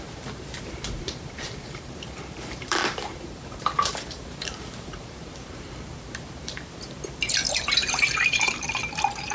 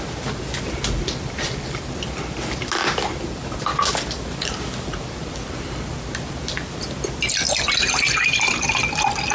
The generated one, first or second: first